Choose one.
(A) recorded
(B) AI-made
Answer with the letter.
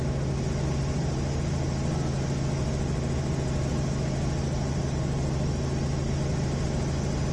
A